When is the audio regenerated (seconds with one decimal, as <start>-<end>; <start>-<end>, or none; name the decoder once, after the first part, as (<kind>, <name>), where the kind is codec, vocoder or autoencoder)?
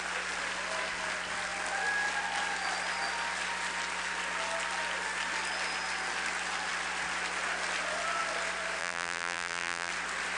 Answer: 8.8-9.9 (vocoder, BigVGAN v2)